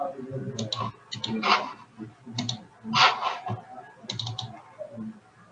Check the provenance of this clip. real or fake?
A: real